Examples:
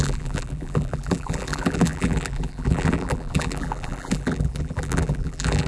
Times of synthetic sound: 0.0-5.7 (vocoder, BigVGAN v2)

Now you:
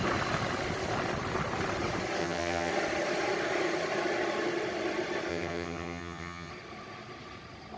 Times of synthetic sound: 2.2-2.7 (vocoder, HiFi-GAN); 5.3-6.5